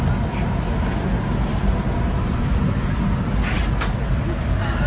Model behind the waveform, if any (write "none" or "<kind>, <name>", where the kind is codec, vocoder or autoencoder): none